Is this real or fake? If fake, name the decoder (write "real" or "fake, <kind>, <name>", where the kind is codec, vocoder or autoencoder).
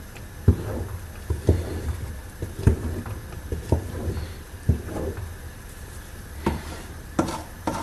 fake, vocoder, BigVGAN v2